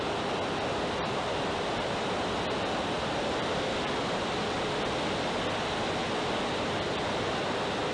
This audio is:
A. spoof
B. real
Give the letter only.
B